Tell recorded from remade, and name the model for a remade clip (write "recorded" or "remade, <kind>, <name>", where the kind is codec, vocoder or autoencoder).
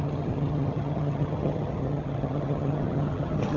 remade, vocoder, HiFi-GAN